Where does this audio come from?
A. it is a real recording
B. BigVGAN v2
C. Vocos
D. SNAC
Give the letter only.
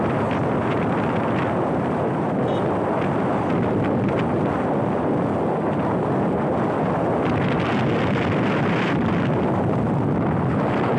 A